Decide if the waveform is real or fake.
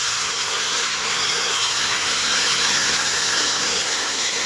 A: fake